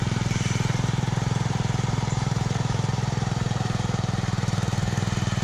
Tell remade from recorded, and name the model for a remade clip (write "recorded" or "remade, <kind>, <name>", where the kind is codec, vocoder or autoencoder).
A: remade, vocoder, BigVGAN v2